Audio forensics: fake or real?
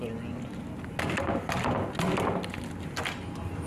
real